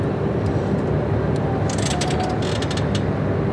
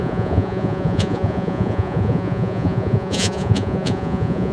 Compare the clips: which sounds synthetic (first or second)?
second